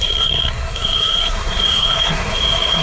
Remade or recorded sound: remade